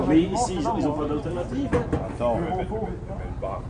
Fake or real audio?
real